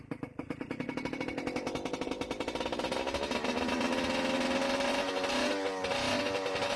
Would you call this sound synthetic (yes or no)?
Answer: no